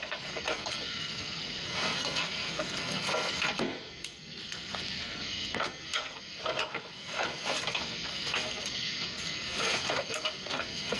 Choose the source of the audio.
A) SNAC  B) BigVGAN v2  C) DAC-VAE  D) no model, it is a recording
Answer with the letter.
A